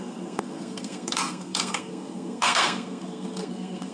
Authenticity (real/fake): fake